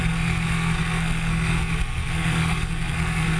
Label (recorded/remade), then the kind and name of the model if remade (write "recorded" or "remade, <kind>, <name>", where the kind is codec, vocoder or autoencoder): remade, codec, SNAC